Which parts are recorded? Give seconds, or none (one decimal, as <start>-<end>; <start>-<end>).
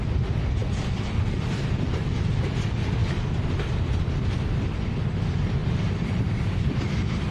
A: 0.0-0.6; 1.7-5.6